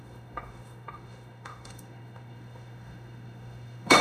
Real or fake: fake